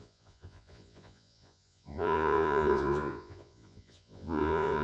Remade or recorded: remade